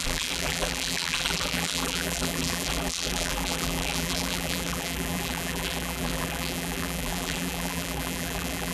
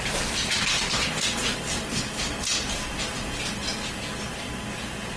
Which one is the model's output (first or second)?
first